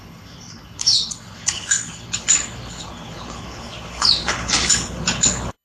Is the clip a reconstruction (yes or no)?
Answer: yes